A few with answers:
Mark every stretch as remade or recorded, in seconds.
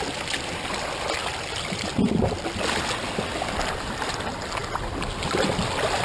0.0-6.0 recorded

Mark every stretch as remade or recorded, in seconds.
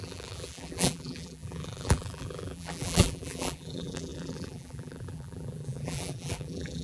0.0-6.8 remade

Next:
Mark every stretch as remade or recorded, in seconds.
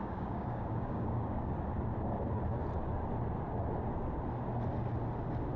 0.0-1.5 remade; 1.5-5.6 recorded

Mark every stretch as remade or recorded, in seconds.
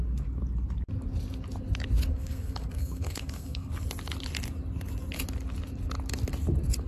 0.0-2.1 recorded; 2.1-3.7 remade; 3.7-6.9 recorded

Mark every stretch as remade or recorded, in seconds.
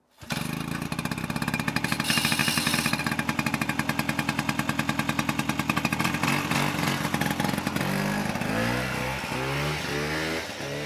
0.0-10.9 recorded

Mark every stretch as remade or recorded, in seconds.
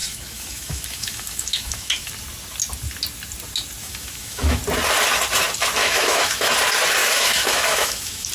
0.0-2.1 remade; 2.1-3.8 recorded; 3.8-4.6 remade; 4.6-5.8 recorded; 5.8-6.5 remade; 6.5-7.0 recorded; 7.0-8.3 remade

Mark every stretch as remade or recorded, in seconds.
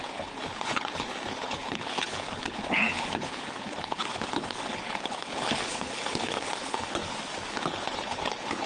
0.0-7.0 remade; 7.0-7.5 recorded; 7.5-8.7 remade